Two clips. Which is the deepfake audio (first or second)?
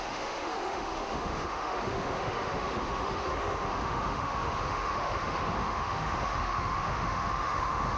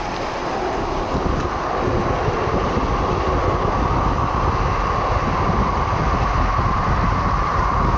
first